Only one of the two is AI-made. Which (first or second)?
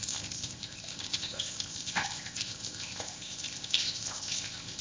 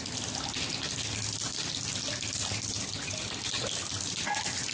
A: first